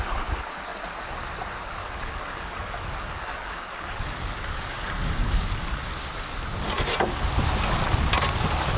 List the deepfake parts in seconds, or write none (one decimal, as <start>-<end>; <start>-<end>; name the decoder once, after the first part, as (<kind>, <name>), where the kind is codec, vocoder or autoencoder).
1.8-5.8 (codec, DAC)